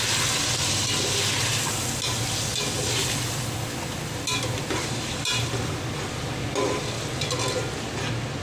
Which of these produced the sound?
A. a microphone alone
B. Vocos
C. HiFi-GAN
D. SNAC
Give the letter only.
A